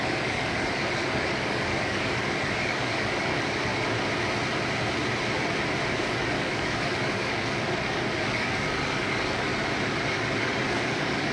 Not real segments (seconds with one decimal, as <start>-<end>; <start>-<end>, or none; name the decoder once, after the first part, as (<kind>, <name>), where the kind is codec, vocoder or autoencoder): 0.0-3.7 (codec, DAC); 6.0-9.5; 10.1-11.3